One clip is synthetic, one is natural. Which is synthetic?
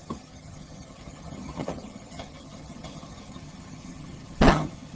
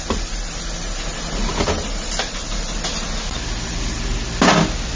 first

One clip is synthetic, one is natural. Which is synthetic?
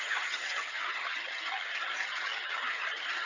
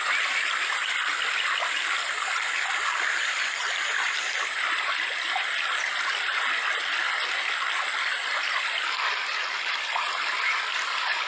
first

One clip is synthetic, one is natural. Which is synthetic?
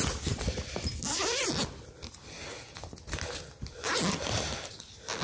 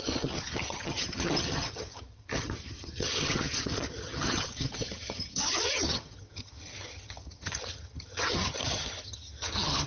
second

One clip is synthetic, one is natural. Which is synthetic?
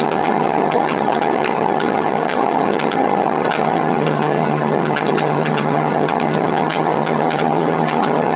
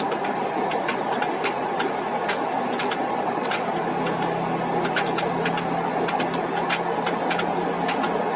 first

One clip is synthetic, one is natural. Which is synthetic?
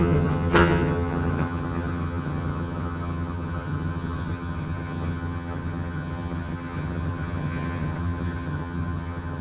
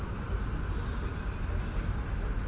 first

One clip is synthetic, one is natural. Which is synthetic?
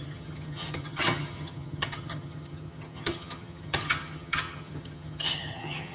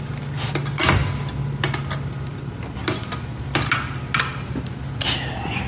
first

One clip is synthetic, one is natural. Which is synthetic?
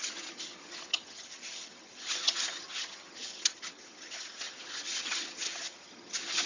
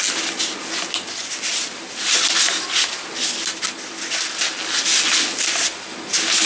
first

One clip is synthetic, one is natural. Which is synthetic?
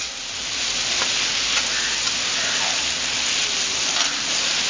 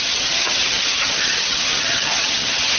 second